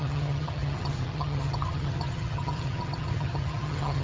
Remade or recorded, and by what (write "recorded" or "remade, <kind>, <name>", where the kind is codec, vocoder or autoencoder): remade, vocoder, HiFi-GAN